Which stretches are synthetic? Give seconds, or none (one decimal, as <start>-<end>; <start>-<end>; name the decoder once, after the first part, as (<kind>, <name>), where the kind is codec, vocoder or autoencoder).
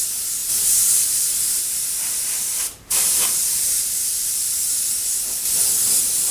0.4-4.2 (vocoder, BigVGAN v2)